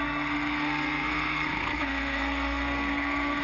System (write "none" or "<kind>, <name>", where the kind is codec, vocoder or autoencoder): codec, SNAC